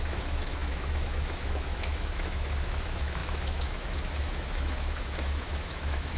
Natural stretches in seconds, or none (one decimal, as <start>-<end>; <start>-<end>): none